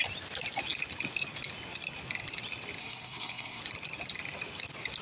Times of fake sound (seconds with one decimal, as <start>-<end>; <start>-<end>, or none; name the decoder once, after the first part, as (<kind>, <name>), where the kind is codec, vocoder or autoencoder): 2.8-3.6 (codec, SNAC)